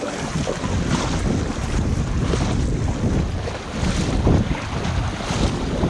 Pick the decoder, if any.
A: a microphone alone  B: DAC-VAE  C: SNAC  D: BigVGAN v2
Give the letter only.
A